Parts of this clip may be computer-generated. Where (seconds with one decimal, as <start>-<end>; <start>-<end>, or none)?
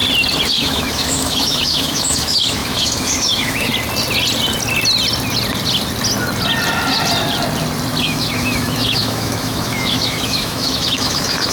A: 0.5-3.7; 8.0-11.5